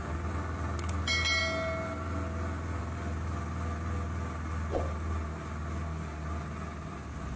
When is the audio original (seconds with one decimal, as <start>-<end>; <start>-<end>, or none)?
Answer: 0.0-7.4